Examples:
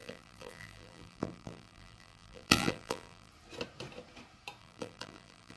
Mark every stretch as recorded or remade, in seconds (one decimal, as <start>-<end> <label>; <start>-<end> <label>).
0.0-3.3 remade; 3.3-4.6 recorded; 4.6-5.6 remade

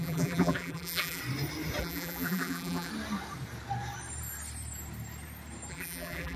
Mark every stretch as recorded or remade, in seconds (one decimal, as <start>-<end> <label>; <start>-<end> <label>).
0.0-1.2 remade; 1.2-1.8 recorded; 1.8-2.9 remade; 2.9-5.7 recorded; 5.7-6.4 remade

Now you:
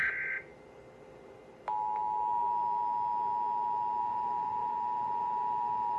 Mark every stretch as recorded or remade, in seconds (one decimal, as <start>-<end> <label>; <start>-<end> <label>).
0.0-4.0 recorded; 4.0-6.0 remade